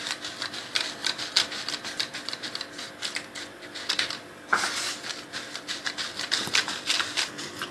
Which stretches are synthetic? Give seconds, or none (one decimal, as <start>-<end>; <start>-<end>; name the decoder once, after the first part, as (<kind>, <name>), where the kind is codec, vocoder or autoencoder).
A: none